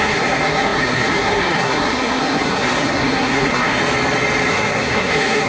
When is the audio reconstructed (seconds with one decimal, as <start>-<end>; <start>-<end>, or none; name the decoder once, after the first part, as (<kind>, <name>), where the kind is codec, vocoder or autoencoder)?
0.0-3.8 (codec, SNAC); 4.5-5.5